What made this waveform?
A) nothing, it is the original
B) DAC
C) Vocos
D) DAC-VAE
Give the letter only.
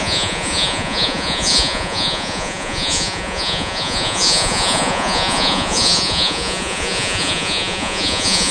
C